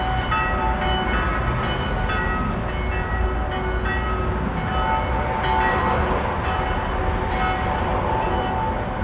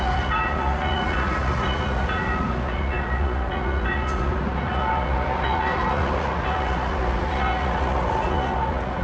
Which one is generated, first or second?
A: second